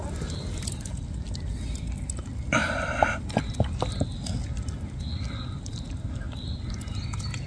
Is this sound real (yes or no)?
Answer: yes